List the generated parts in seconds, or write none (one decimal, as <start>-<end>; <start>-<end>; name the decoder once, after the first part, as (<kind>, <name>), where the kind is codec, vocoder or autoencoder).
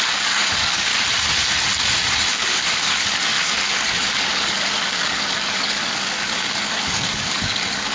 0.0-0.9 (codec, DAC); 2.3-7.9